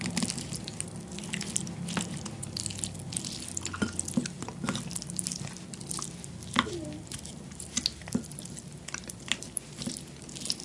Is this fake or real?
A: real